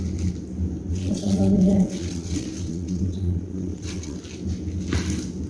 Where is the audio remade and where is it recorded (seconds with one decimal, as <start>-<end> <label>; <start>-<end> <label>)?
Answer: 0.0-0.9 recorded; 0.9-4.2 remade; 4.2-5.5 recorded